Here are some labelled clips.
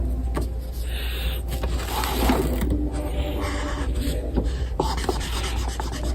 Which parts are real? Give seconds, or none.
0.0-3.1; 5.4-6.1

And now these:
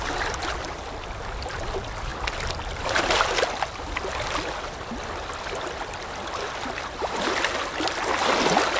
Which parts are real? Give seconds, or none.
0.0-8.8

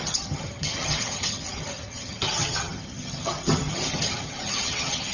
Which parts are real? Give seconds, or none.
none

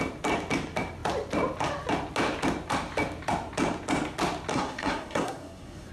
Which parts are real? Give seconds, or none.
0.0-4.5

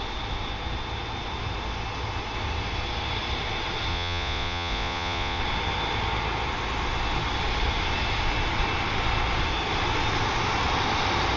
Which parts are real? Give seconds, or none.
0.0-3.9; 5.4-11.4